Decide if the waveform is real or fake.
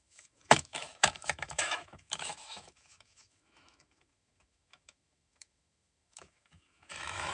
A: fake